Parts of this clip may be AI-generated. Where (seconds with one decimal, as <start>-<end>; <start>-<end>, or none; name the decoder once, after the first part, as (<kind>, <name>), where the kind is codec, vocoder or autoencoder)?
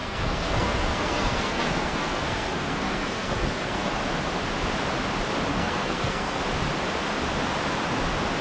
0.0-4.0 (codec, SNAC); 5.5-6.4